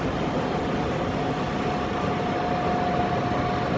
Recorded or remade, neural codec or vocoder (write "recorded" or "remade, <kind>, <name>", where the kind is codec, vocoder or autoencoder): recorded